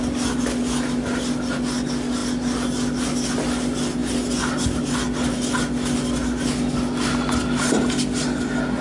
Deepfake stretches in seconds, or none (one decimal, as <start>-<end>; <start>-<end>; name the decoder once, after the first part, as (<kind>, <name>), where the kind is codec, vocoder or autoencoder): none